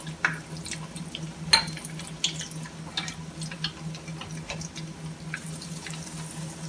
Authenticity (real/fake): real